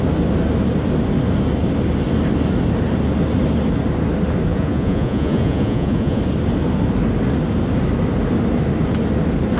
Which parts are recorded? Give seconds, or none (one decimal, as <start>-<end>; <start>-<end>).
0.0-4.5; 6.2-9.6